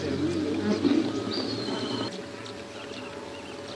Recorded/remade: recorded